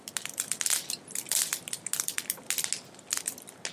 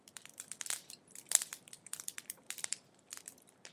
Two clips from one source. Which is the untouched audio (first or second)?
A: first